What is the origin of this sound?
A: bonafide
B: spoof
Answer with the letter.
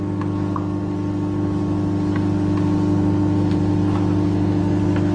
A